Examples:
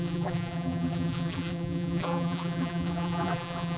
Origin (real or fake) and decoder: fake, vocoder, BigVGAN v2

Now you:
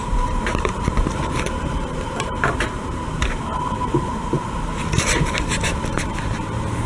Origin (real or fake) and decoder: fake, vocoder, BigVGAN v2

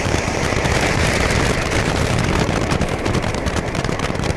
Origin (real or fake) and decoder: fake, vocoder, BigVGAN v2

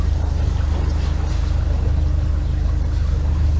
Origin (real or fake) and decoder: fake, vocoder, BigVGAN v2